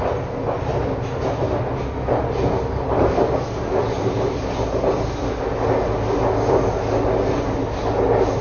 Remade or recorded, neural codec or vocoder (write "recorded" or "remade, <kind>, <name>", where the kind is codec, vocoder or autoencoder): recorded